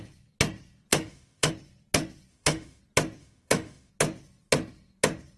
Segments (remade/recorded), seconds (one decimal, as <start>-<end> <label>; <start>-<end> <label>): 0.0-0.9 recorded; 0.9-1.5 remade; 1.5-2.3 recorded; 2.3-2.8 remade; 2.8-3.2 recorded; 3.2-3.9 remade; 3.9-5.4 recorded